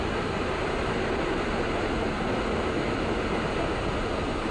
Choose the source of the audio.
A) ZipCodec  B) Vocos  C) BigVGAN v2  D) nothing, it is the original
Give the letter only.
D